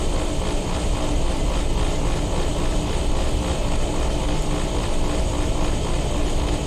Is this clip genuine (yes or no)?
yes